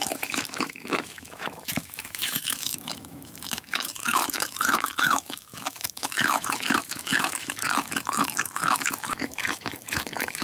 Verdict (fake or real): fake